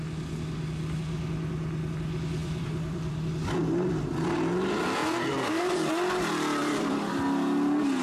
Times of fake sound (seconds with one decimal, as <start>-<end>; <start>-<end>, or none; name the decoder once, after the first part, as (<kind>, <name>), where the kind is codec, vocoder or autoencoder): 2.4-3.3 (vocoder, BigVGAN v2); 5.0-5.6; 6.6-7.1